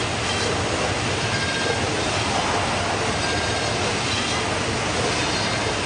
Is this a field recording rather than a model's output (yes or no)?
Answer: yes